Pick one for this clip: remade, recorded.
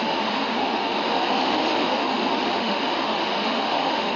remade